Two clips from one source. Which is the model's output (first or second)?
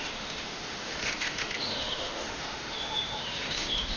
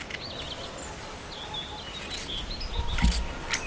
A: first